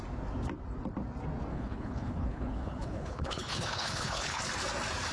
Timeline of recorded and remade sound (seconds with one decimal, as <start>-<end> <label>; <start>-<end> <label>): 0.0-1.5 recorded; 1.5-4.4 remade; 4.4-5.1 recorded

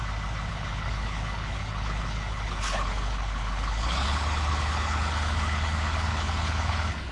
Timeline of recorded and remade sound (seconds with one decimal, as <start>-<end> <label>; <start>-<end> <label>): 0.0-0.5 recorded; 0.5-7.1 remade

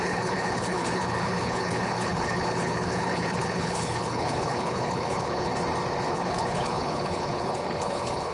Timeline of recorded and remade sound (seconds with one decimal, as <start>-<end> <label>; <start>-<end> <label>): 0.0-5.5 remade; 5.5-6.1 recorded; 6.1-8.3 remade

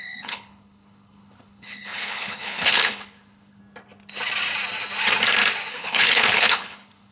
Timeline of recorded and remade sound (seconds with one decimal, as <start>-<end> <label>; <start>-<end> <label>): 0.0-3.6 remade; 3.6-5.7 recorded; 5.7-7.1 remade

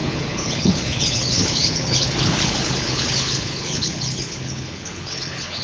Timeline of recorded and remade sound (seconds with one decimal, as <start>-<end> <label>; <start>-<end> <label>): 0.0-5.6 remade